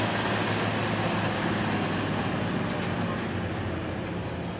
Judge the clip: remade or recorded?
recorded